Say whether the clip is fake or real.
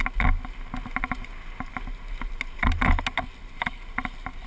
real